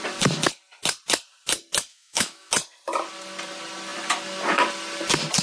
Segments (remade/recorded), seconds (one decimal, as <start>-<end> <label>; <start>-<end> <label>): 0.0-1.9 recorded; 1.9-2.5 remade; 2.5-5.4 recorded